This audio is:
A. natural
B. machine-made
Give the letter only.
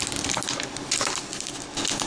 A